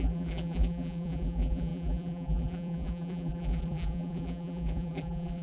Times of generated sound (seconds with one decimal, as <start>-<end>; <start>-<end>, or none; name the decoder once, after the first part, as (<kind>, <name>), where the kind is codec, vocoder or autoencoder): 0.0-5.4 (vocoder, BigVGAN v2)